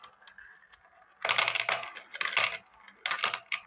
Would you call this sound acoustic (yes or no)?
yes